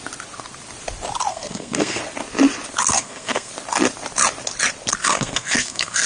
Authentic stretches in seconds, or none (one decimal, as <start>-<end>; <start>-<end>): 0.0-1.3; 2.0-2.9; 3.5-5.0